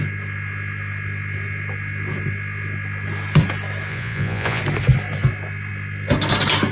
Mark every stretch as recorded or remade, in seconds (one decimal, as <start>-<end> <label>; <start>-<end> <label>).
0.0-3.9 recorded; 3.9-4.6 remade; 4.6-6.7 recorded

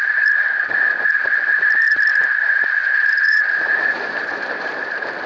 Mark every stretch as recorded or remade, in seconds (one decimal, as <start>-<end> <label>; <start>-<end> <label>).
0.0-2.1 recorded; 2.1-4.1 remade; 4.1-5.3 recorded

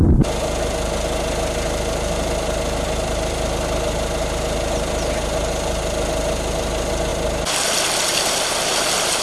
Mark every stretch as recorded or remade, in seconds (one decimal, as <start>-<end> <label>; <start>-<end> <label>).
0.0-9.2 recorded

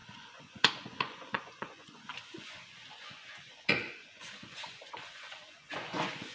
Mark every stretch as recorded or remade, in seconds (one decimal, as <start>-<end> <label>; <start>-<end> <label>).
0.0-6.3 remade

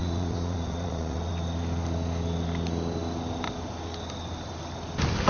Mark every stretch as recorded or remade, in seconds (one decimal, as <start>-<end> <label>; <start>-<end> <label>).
0.0-1.3 remade; 1.3-5.3 recorded

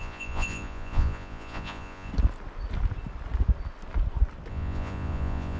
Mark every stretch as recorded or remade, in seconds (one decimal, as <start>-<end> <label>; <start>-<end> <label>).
0.0-2.1 remade; 2.1-4.5 recorded; 4.5-5.6 remade

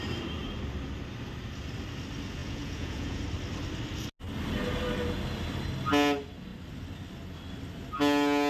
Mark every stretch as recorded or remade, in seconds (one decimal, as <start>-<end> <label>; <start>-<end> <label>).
0.0-2.4 recorded; 2.4-3.2 remade; 3.2-8.5 recorded

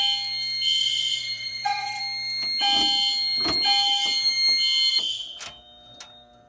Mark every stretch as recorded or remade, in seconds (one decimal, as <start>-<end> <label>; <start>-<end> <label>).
0.0-0.8 recorded; 0.8-2.0 remade; 2.0-4.9 recorded; 4.9-5.4 remade; 5.4-6.5 recorded